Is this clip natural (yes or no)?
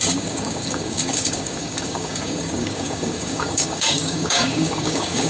no